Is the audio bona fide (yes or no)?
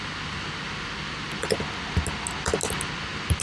yes